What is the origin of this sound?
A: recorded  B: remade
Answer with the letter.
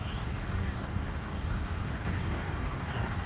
B